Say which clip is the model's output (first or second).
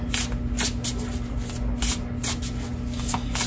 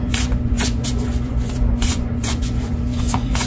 second